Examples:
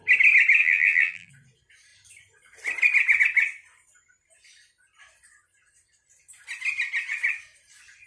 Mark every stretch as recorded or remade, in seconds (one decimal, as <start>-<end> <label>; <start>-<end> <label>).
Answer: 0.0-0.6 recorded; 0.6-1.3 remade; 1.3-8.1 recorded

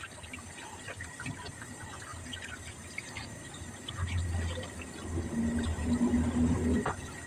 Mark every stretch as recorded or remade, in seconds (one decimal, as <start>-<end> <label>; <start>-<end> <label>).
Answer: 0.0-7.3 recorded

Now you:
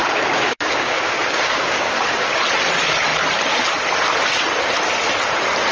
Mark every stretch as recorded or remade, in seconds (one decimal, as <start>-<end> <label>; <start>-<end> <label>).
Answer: 0.0-2.4 remade; 2.4-5.7 recorded